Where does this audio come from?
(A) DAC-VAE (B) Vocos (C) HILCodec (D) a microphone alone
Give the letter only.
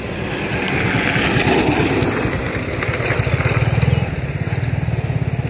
D